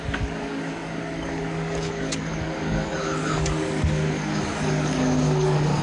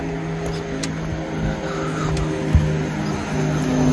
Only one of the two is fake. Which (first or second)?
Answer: first